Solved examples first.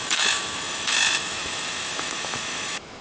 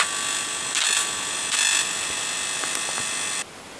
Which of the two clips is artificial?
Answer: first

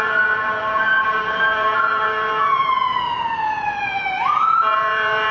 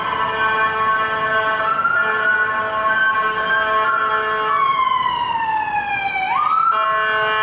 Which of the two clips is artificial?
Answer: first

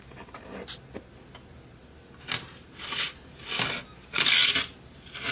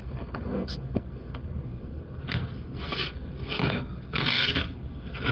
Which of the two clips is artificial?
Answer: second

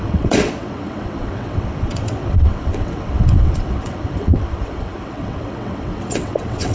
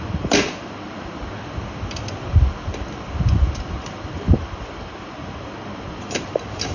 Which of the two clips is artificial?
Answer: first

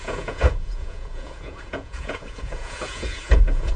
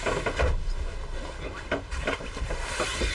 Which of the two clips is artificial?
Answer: first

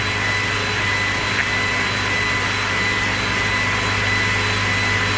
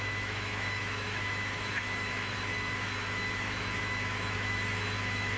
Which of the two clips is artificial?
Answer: second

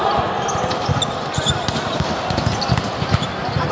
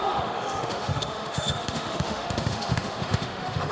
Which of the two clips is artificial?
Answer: second